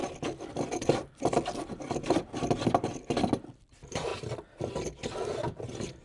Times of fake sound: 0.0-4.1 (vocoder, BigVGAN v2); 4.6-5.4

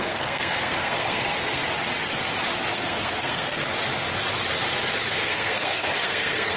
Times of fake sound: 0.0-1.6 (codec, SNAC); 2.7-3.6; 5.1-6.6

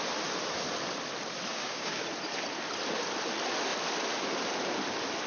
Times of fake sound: 1.5-2.0 (codec, DAC)

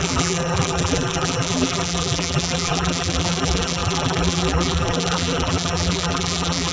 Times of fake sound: 0.0-6.7 (vocoder, BigVGAN v2)

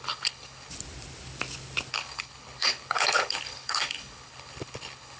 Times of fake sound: 0.0-0.7 (codec, HILCodec); 1.9-5.2

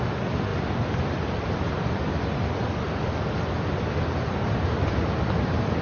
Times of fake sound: none

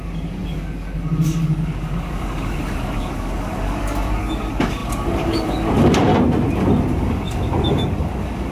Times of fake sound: 0.0-6.1 (codec, DAC); 7.0-8.5